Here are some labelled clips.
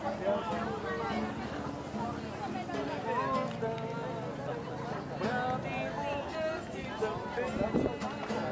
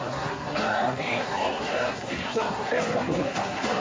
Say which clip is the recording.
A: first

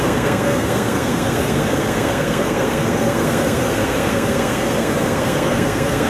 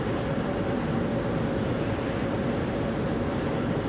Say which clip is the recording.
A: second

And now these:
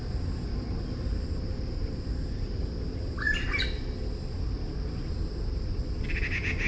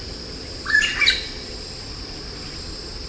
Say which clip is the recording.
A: first